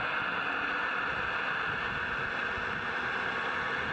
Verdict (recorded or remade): recorded